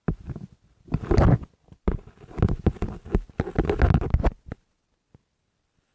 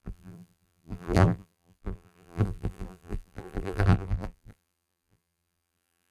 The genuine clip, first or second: first